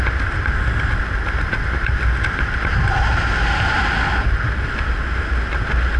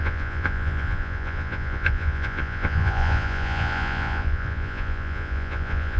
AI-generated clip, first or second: second